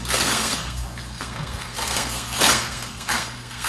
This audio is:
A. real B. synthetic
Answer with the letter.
B